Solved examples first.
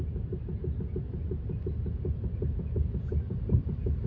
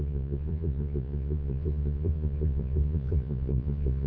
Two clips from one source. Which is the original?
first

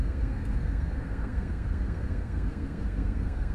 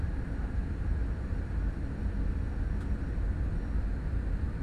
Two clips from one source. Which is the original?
second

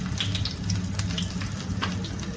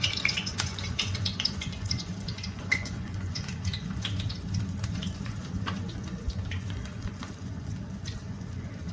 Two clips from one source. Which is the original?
first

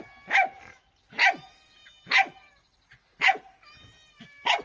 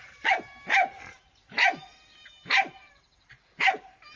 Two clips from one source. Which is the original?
first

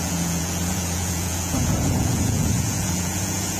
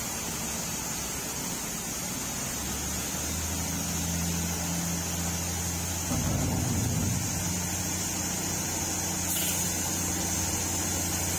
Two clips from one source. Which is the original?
second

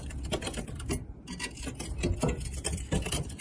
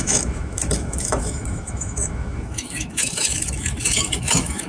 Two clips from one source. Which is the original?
first